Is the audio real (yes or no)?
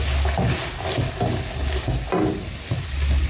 yes